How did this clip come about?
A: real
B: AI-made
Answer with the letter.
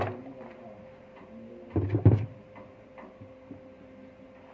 A